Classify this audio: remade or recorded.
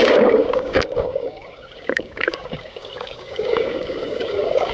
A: remade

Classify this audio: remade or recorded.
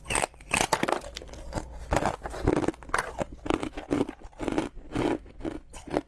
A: recorded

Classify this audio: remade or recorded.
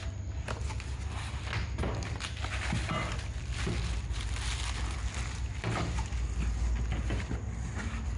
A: recorded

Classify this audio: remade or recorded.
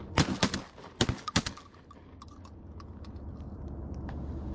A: recorded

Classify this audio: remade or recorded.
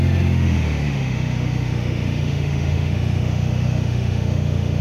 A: remade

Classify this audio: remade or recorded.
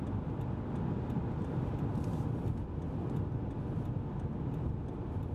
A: recorded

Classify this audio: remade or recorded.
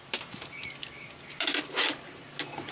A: recorded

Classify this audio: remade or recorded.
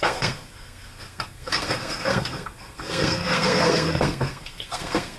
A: remade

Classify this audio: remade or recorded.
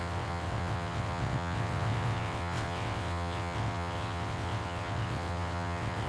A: remade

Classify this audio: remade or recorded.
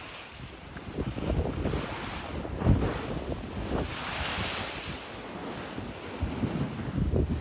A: recorded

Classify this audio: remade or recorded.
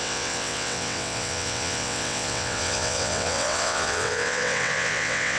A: remade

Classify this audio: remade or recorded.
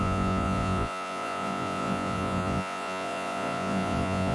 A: remade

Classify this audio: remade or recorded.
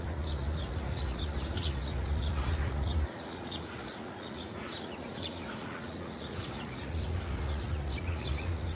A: remade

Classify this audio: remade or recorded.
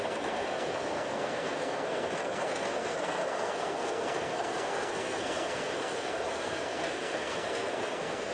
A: remade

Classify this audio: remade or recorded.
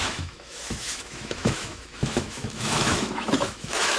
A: remade